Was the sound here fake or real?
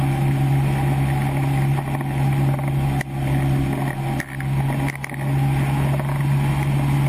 real